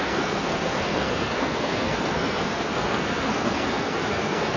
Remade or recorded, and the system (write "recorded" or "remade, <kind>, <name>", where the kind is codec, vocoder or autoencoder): remade, codec, SNAC